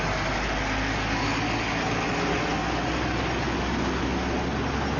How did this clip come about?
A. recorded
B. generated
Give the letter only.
A